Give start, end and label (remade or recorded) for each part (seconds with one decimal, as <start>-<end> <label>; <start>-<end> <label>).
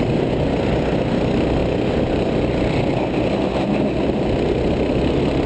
0.0-5.5 recorded